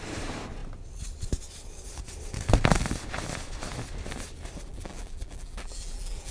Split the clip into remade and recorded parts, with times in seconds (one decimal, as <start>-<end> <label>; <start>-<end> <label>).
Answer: 0.0-4.7 recorded; 4.7-6.3 remade